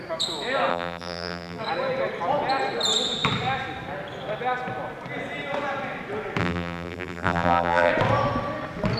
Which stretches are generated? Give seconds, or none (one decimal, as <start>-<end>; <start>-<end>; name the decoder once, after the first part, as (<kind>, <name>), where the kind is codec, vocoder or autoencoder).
0.7-1.6 (vocoder, BigVGAN v2); 6.4-7.9